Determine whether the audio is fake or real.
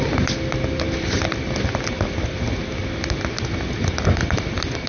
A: real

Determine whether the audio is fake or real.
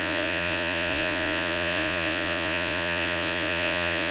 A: fake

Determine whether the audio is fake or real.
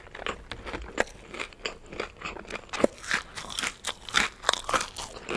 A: real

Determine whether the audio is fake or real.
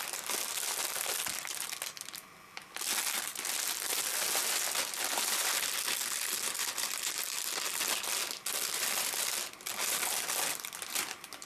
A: real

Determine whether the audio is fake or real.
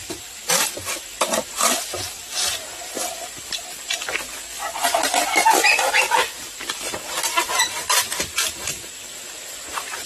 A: fake